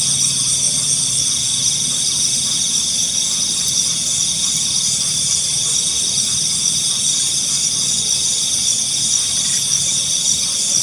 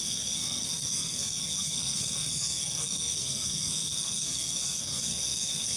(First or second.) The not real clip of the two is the second